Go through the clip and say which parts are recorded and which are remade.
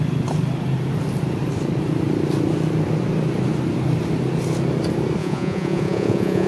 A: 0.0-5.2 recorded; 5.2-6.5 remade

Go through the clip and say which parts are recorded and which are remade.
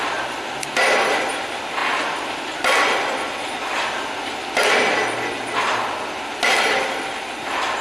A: 0.0-7.8 recorded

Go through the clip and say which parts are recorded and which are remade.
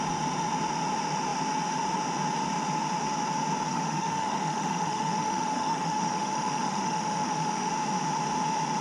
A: 0.0-3.7 recorded; 3.7-7.7 remade; 7.7-8.8 recorded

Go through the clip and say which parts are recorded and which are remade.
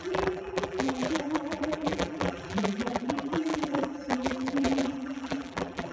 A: 0.0-5.9 remade